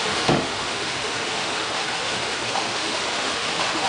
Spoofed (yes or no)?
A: yes